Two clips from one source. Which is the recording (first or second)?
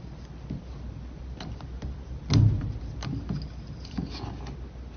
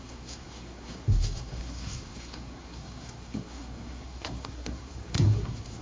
first